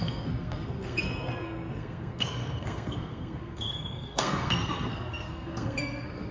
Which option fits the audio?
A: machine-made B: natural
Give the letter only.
A